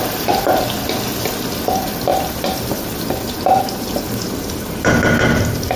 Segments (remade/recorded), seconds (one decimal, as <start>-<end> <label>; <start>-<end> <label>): 0.0-5.8 recorded